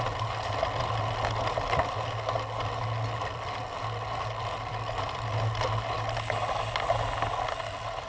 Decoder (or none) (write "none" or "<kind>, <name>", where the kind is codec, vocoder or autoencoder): none